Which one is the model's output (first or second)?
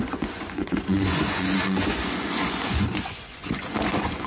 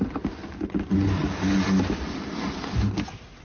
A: first